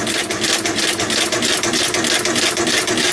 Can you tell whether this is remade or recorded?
recorded